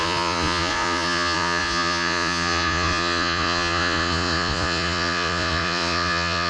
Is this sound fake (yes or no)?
yes